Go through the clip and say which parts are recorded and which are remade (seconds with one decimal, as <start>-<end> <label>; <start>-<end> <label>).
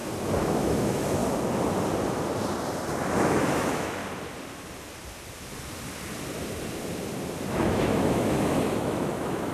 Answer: 0.0-0.5 recorded; 0.5-1.2 remade; 1.2-3.0 recorded; 3.0-4.0 remade; 4.0-7.5 recorded; 7.5-9.5 remade